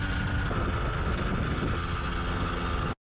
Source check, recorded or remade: recorded